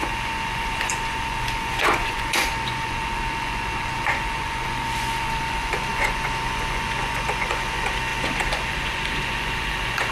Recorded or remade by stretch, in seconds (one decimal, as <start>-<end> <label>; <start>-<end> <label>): 0.0-10.1 remade